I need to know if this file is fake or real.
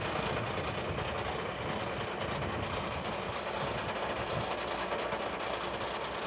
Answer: real